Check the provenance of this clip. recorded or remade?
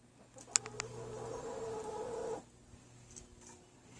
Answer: recorded